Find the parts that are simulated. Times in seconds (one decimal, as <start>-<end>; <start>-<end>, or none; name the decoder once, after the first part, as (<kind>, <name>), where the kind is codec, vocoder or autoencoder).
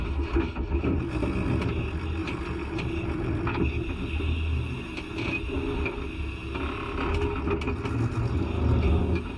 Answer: 2.2-3.3 (vocoder, BigVGAN v2)